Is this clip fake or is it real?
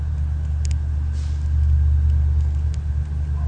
real